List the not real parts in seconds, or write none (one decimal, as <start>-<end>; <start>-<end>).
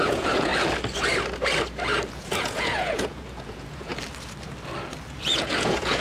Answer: 0.0-0.5; 2.1-3.9; 5.2-6.0